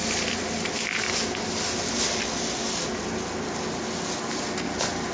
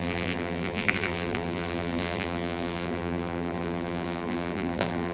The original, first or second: first